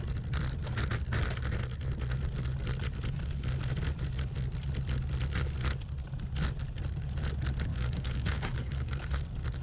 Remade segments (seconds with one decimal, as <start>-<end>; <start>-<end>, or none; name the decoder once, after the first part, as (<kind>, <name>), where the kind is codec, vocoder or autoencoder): 7.7-9.1 (codec, DAC)